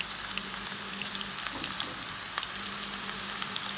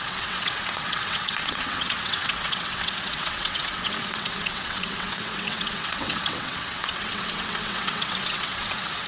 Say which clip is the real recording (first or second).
first